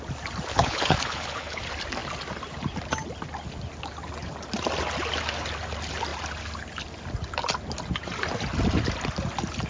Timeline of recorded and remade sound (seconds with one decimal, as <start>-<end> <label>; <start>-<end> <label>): 0.0-0.5 recorded; 0.5-1.6 remade; 1.6-9.7 recorded